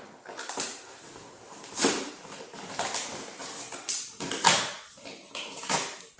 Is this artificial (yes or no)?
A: no